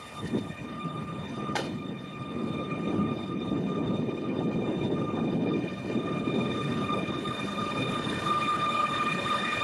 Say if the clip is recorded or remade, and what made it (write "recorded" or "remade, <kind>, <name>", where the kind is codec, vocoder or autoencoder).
remade, codec, HILCodec